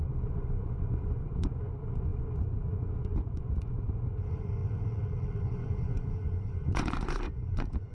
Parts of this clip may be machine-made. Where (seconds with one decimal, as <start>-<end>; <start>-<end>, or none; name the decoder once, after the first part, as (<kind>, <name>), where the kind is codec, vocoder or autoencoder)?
0.0-4.6 (vocoder, Vocos); 5.4-7.9